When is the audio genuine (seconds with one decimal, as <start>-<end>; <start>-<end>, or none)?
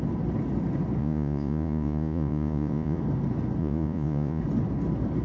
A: 0.0-1.0; 3.0-3.6; 4.4-5.2